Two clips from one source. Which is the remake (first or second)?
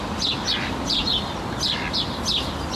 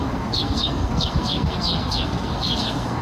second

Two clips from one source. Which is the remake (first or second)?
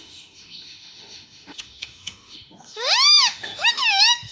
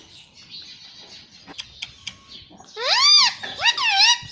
first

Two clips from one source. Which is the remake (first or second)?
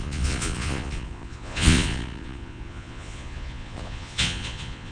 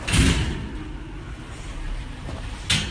first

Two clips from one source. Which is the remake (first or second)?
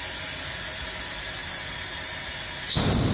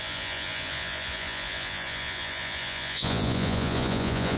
second